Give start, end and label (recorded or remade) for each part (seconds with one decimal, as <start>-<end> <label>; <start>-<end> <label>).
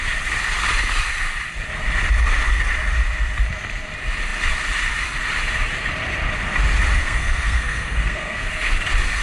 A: 0.0-7.0 recorded; 7.0-8.5 remade; 8.5-9.2 recorded